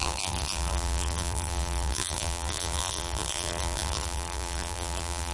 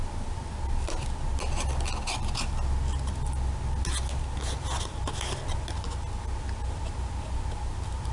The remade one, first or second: first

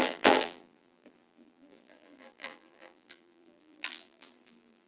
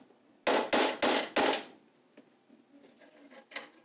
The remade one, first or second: first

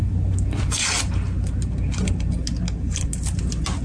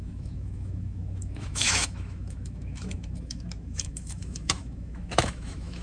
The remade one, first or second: second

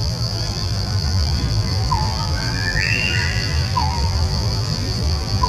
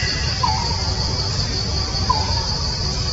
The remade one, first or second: first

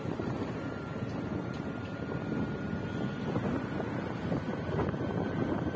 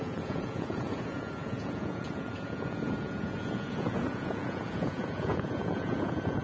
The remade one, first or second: second